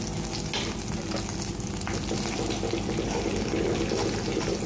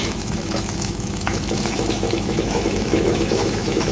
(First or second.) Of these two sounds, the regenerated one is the second